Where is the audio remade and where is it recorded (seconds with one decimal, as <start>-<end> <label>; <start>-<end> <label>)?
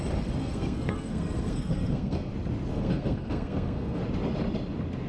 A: 0.0-0.4 recorded; 0.4-2.3 remade; 2.3-2.7 recorded; 2.7-4.0 remade; 4.0-5.1 recorded